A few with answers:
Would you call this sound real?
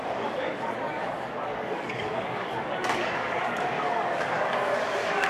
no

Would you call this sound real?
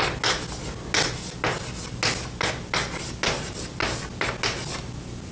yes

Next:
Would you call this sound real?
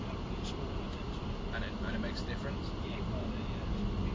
yes